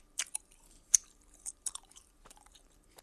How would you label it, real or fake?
fake